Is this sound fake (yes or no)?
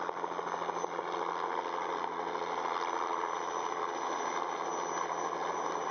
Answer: no